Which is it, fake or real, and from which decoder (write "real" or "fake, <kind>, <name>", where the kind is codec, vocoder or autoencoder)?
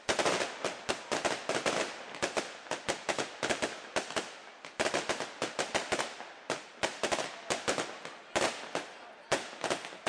real